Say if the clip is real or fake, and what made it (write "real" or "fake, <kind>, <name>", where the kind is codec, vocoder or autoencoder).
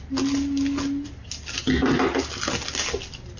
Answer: real